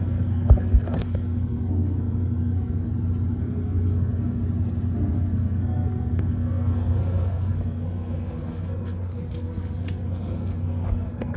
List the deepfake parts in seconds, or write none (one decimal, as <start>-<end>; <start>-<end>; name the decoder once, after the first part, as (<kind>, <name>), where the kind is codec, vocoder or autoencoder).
0.0-2.9 (codec, SNAC); 3.4-4.4; 5.1-11.4